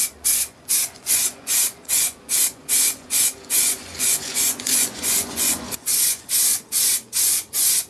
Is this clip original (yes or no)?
no